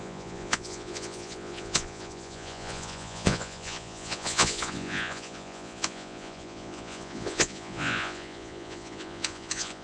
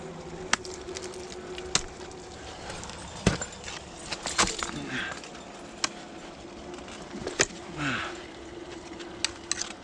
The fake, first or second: first